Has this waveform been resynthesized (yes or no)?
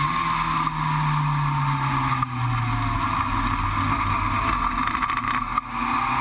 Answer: no